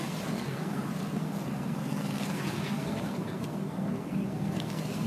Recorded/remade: remade